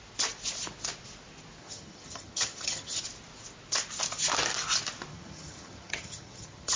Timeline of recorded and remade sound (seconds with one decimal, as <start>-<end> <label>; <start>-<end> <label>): 0.0-1.6 recorded; 1.6-3.0 remade; 3.0-5.1 recorded; 5.1-6.8 remade